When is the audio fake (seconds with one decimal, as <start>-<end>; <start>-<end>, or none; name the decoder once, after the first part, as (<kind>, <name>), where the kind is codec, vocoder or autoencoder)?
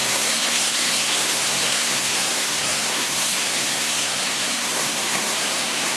0.0-6.0 (codec, SNAC)